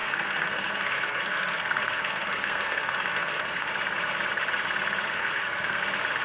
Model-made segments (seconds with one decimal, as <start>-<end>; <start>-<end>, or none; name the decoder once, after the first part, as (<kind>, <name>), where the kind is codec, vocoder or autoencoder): 0.0-3.7 (codec, SNAC); 5.1-5.8

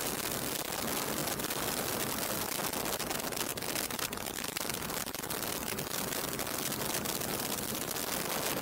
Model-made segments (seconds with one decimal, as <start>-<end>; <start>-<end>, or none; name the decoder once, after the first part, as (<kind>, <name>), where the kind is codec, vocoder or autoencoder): 1.2-2.4 (vocoder, BigVGAN v2); 7.3-8.0

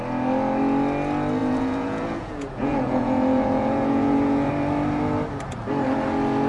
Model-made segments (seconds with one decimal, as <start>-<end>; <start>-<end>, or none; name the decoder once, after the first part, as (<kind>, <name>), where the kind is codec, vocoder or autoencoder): 1.4-4.5 (vocoder, Vocos)

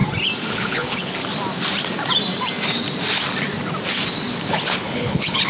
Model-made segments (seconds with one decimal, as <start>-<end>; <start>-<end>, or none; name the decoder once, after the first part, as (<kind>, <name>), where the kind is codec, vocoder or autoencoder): 0.5-1.2 (codec, HILCodec); 4.5-5.5

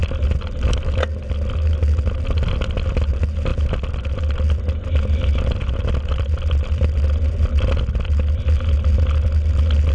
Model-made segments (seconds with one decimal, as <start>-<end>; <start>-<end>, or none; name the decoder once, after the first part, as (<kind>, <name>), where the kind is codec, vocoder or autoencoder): none